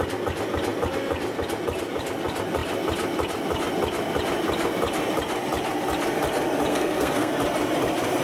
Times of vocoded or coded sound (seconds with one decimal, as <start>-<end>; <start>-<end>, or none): 6.7-7.3